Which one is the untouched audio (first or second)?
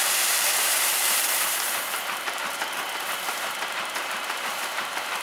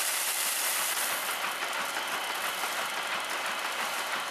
second